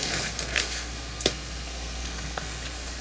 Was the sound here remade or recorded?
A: remade